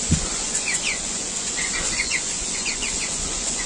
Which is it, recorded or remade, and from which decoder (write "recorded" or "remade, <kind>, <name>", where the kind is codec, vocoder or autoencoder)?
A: remade, vocoder, Vocos